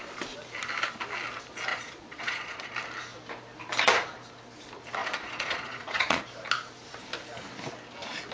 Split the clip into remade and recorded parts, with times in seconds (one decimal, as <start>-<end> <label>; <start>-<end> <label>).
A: 0.0-1.7 recorded; 1.7-2.7 remade; 2.7-5.0 recorded; 5.0-6.2 remade; 6.2-8.3 recorded